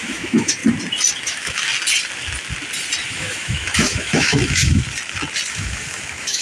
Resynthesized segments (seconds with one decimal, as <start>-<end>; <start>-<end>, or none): 0.0-0.6; 1.2-1.7; 3.1-4.8; 5.5-6.4